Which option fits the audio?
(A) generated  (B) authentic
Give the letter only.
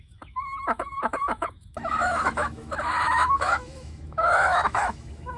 A